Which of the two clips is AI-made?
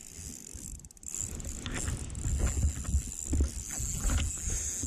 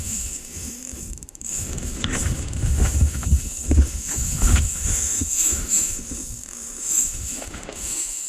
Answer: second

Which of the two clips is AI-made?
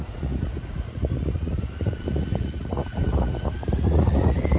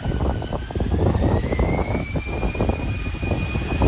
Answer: first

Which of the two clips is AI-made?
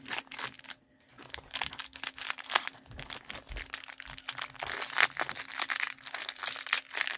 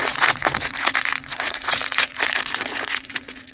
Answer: second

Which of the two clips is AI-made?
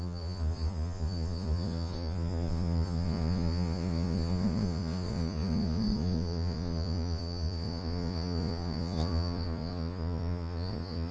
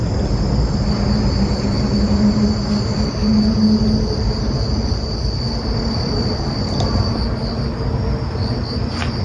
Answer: first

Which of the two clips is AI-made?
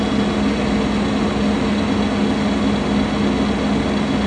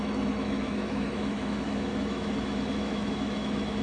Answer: second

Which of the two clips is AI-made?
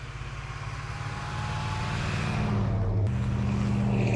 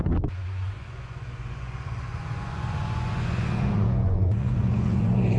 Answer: second